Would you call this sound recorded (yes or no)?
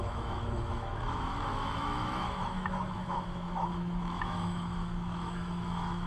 no